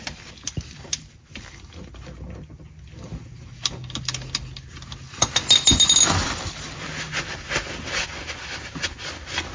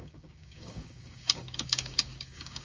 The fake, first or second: second